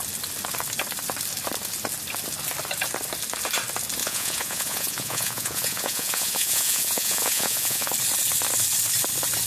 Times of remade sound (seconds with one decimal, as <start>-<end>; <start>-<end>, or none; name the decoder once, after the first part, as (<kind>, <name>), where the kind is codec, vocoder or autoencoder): 4.0-7.9 (vocoder, Vocos)

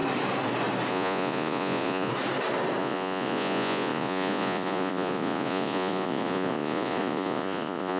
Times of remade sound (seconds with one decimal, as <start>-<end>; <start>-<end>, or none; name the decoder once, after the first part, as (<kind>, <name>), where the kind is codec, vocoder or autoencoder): 0.9-2.1 (vocoder, Vocos); 2.8-8.0

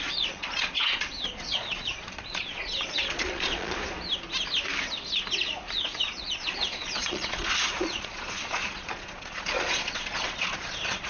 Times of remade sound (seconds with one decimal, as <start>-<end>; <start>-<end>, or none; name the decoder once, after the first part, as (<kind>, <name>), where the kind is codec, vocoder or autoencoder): 0.0-3.8 (vocoder, Vocos); 5.8-11.1